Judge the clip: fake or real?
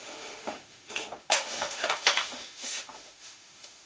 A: fake